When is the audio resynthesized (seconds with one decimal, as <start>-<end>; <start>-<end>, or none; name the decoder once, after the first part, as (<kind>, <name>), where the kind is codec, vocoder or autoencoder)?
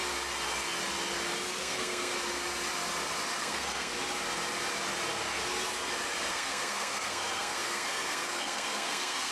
1.6-2.1 (codec, SNAC); 3.4-3.9; 6.3-9.3